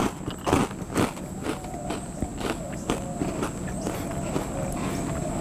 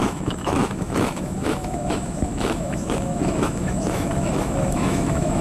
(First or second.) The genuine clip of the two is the first